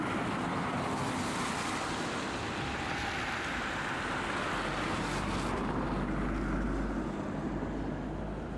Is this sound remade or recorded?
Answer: recorded